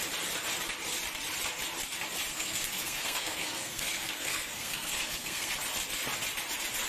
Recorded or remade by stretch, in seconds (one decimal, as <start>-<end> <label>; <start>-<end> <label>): 0.0-2.3 recorded; 2.3-5.5 remade; 5.5-6.9 recorded